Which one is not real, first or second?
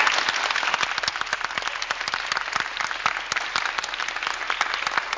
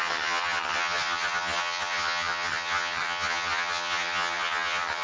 second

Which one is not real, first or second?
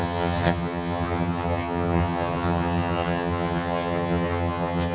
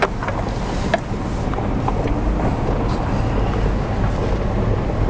first